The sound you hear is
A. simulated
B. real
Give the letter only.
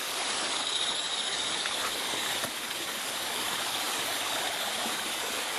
A